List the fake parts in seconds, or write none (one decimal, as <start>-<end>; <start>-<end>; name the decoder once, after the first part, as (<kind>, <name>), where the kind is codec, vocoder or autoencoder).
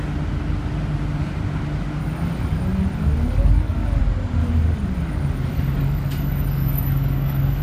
2.0-4.0 (codec, DAC); 4.4-7.6